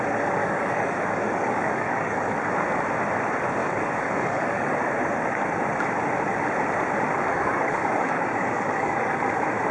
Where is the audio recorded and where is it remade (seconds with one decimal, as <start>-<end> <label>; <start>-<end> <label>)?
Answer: 0.0-0.4 recorded; 0.4-2.5 remade; 2.5-3.6 recorded; 3.6-4.8 remade; 4.8-7.3 recorded; 7.3-9.2 remade; 9.2-9.7 recorded